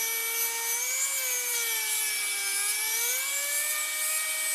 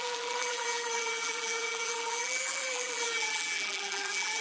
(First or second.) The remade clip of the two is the second